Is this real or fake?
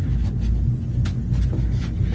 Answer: real